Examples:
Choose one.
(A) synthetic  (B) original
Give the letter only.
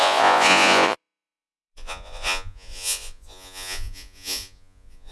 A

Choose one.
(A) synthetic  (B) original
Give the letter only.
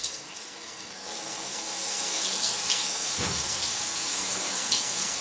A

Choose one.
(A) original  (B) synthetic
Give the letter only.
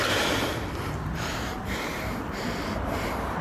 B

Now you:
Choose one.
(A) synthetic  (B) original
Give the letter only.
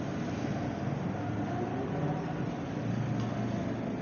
B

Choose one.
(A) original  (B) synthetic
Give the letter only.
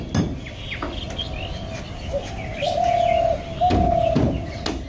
A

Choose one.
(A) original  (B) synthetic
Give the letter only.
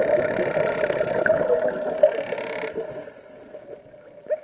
A